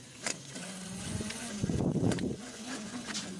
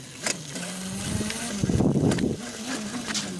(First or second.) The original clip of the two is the second